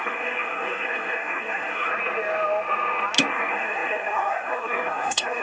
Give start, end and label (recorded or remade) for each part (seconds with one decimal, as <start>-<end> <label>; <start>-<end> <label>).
0.0-1.9 remade; 1.9-3.3 recorded; 3.3-5.4 remade